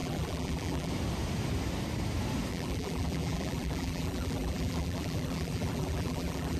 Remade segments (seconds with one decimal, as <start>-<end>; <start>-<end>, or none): 0.0-0.9; 2.5-6.6